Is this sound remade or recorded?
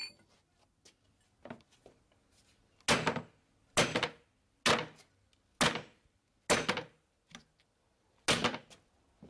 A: recorded